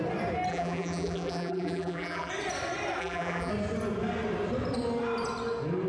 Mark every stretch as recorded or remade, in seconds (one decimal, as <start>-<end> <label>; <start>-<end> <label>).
0.0-0.5 recorded; 0.5-2.3 remade; 2.3-3.0 recorded; 3.0-3.5 remade; 3.5-5.9 recorded

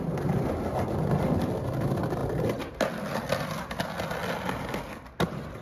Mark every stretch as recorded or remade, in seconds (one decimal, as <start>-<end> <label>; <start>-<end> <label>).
0.0-5.6 recorded

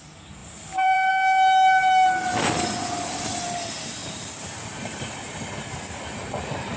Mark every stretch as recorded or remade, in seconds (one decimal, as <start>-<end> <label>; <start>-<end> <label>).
0.0-0.4 recorded; 0.4-1.1 remade; 1.1-4.0 recorded; 4.0-5.2 remade; 5.2-6.8 recorded

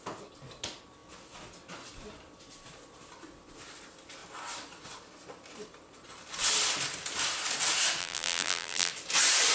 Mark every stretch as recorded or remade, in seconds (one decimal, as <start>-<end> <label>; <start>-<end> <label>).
0.0-8.0 recorded; 8.0-8.9 remade; 8.9-9.5 recorded

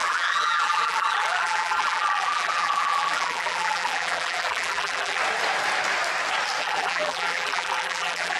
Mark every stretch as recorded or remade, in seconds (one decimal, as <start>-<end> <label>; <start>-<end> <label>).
0.0-5.2 remade; 5.2-6.6 recorded; 6.6-8.4 remade

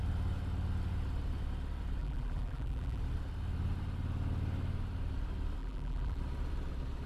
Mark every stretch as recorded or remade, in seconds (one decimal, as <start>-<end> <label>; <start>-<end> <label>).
0.0-2.0 recorded; 2.0-3.0 remade; 3.0-5.6 recorded; 5.6-6.2 remade; 6.2-7.1 recorded

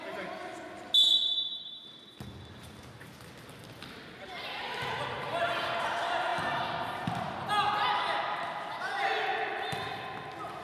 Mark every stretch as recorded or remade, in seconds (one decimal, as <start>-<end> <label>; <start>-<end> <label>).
0.0-6.3 recorded; 6.3-7.5 remade; 7.5-10.6 recorded

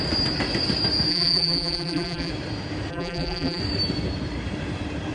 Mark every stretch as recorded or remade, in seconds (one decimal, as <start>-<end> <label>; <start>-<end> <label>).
0.0-1.1 recorded; 1.1-2.3 remade; 2.3-2.9 recorded; 2.9-3.6 remade; 3.6-5.1 recorded